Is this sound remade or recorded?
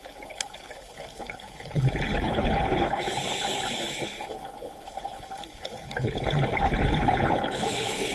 remade